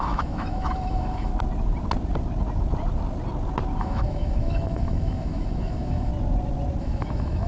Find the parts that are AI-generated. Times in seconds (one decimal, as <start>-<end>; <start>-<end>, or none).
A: 0.0-1.3; 3.8-6.1; 6.8-7.5

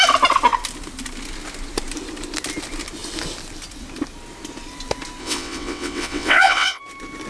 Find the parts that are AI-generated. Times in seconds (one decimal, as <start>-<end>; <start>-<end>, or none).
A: 5.2-6.8